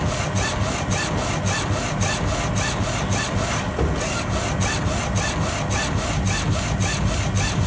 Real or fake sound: real